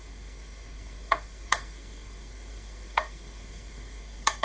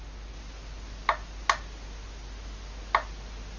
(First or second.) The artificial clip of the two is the first